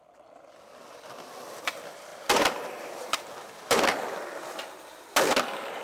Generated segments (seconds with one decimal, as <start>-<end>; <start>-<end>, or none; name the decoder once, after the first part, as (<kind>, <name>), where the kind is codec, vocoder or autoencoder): 2.1-4.6 (vocoder, BigVGAN v2)